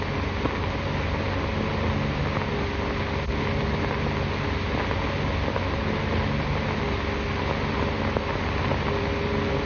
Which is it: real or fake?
real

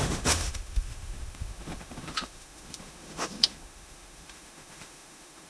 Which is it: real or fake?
fake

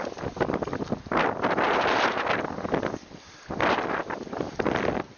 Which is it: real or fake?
real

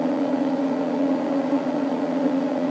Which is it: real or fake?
fake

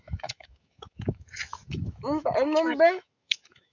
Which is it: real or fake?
fake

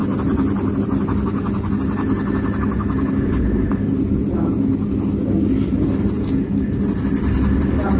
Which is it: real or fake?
real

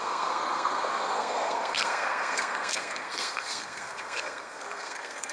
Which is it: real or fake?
fake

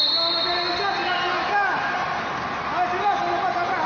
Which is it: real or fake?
real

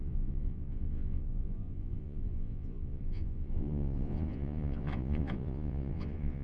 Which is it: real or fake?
fake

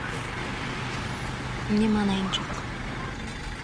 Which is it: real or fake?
real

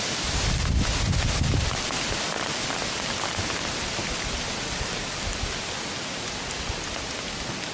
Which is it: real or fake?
real